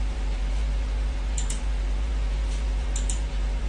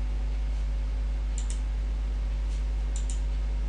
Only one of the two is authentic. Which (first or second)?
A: second